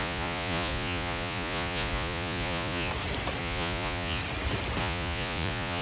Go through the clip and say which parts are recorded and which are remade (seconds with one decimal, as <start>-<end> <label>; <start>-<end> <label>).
0.0-2.9 remade; 2.9-3.4 recorded; 3.4-4.2 remade; 4.2-4.8 recorded; 4.8-5.8 remade